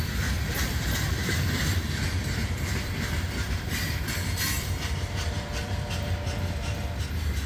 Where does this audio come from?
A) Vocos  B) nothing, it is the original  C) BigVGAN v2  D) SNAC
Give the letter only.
C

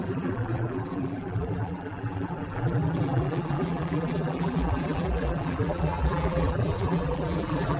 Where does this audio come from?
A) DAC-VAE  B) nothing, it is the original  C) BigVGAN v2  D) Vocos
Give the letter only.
C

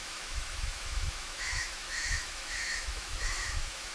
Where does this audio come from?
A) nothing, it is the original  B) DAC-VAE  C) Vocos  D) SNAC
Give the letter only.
B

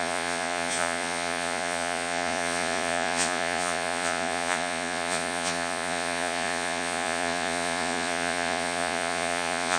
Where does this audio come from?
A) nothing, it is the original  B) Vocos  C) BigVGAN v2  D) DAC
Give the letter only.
B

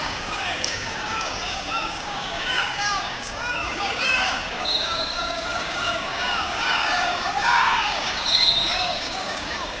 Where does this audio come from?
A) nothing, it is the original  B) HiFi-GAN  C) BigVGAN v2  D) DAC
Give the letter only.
D